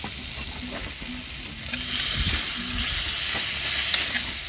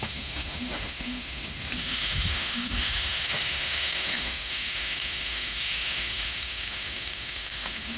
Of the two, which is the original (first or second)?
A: first